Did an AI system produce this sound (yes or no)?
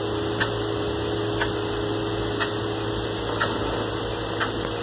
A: no